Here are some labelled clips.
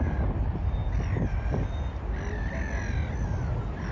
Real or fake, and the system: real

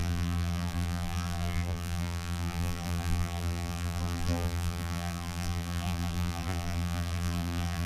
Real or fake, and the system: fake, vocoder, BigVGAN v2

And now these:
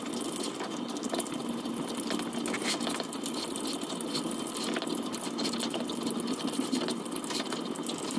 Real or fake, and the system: real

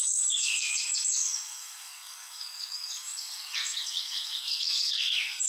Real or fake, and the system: fake, codec, SNAC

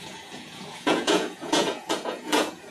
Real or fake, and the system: fake, vocoder, Vocos